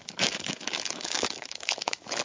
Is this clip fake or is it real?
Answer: fake